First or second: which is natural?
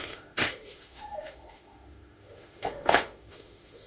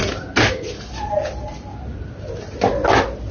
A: second